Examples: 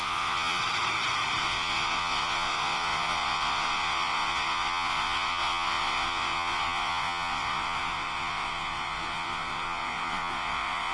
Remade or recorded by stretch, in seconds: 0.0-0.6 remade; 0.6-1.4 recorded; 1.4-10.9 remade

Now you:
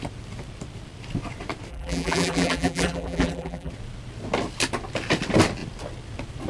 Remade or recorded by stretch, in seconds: 0.0-1.7 recorded; 1.7-3.7 remade; 3.7-6.5 recorded

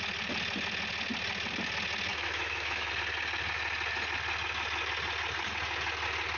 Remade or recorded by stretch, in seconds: 0.0-2.1 recorded; 2.1-2.9 remade; 2.9-6.4 recorded

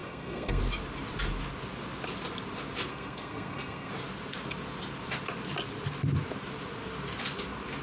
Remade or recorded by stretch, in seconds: 0.0-0.6 remade; 0.6-2.9 recorded; 2.9-3.9 remade; 3.9-7.8 recorded

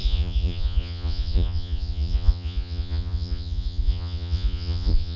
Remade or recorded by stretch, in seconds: 0.0-5.2 remade